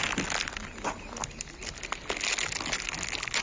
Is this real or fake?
real